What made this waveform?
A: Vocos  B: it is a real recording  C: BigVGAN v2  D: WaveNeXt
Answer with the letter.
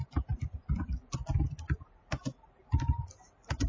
B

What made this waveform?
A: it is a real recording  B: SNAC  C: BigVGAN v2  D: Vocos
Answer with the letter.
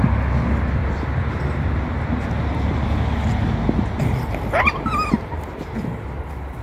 A